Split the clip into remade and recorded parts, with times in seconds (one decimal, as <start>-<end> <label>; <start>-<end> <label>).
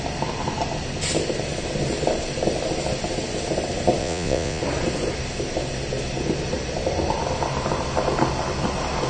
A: 0.0-4.0 recorded; 4.0-4.6 remade; 4.6-9.1 recorded